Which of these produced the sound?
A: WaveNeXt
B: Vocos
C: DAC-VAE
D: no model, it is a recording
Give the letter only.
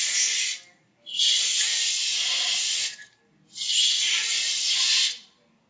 D